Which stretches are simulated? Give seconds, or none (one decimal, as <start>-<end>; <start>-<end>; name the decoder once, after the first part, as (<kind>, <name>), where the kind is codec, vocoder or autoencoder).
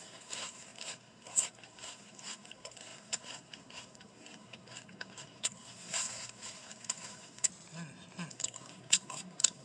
0.0-7.5 (codec, SNAC); 8.3-9.6